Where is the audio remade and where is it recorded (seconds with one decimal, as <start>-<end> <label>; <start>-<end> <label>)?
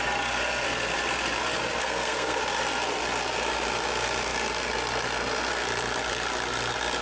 0.0-1.8 recorded; 1.8-2.4 remade; 2.4-7.0 recorded